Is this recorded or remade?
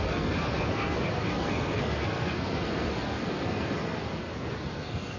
remade